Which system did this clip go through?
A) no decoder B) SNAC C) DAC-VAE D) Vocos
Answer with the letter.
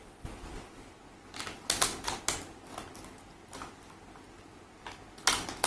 A